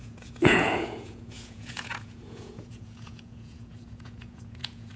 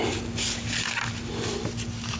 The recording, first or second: second